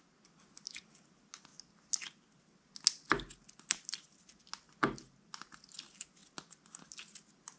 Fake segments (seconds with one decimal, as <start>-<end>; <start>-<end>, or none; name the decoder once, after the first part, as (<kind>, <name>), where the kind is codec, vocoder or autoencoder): none

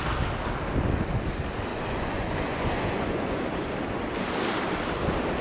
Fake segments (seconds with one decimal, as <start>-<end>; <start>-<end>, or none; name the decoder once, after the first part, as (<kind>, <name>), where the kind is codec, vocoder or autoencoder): 1.7-3.7 (vocoder, Vocos)

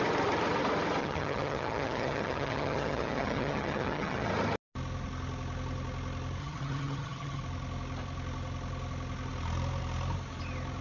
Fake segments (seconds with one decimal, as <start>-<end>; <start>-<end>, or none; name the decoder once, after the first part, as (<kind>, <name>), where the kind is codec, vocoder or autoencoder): 1.0-4.3 (vocoder, HiFi-GAN); 6.4-7.4

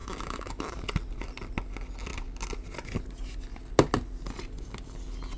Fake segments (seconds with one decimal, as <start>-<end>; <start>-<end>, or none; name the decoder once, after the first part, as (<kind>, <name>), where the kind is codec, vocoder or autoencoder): 0.0-0.7 (autoencoder, DAC-VAE)

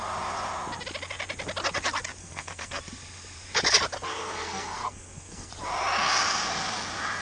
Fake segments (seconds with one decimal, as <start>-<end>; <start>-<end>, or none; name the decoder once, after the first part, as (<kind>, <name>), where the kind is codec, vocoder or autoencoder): 2.2-2.8 (codec, SNAC); 4.1-5.5

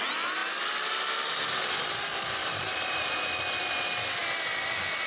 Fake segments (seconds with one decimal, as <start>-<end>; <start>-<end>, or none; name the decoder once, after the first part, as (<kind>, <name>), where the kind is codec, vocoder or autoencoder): 2.4-3.1 (vocoder, BigVGAN v2)

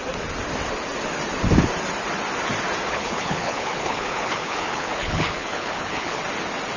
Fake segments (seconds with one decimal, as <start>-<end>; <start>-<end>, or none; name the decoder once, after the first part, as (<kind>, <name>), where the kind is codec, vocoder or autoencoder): 2.9-6.2 (codec, HILCodec)